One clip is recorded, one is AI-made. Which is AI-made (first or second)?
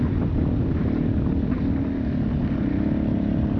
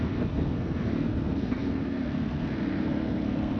second